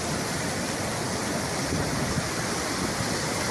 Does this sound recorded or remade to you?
recorded